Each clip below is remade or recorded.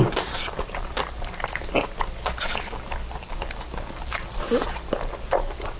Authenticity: recorded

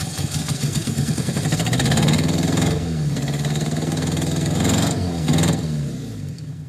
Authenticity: remade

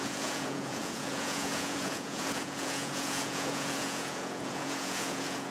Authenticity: remade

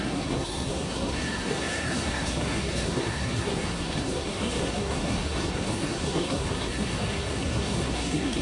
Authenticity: remade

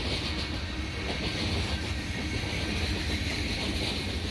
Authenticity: recorded